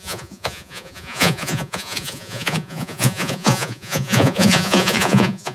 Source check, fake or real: fake